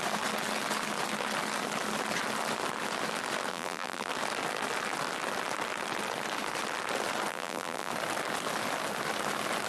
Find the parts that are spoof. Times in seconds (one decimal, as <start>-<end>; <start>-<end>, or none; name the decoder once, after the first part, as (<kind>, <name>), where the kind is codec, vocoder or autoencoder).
3.5-4.1 (vocoder, BigVGAN v2); 7.3-7.9

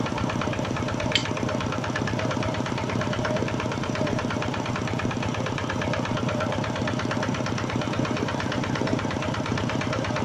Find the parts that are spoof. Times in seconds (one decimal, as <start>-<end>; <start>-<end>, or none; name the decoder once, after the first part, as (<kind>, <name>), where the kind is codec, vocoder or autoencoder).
0.0-10.2 (vocoder, BigVGAN v2)